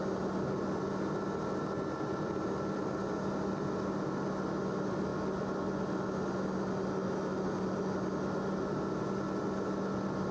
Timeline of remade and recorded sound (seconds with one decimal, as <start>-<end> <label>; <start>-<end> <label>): 0.0-10.3 recorded